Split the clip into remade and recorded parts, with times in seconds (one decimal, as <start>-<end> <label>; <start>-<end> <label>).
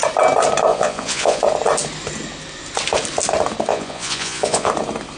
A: 0.0-0.7 recorded; 0.7-1.4 remade; 1.4-3.7 recorded; 3.7-4.7 remade; 4.7-5.2 recorded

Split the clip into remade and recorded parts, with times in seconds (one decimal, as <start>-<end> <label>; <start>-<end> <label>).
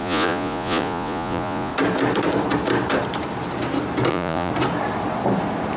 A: 0.0-1.7 remade; 1.7-4.1 recorded; 4.1-4.5 remade; 4.5-5.8 recorded